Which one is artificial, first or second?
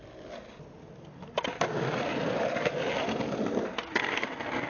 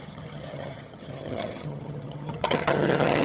second